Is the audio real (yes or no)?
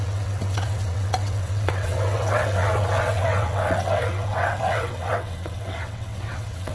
no